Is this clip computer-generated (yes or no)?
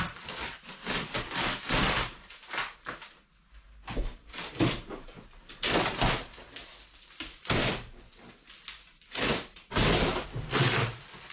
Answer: no